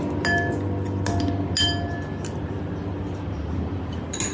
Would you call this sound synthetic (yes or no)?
no